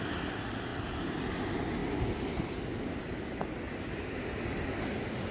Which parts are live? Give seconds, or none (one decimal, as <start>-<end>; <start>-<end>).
0.0-5.3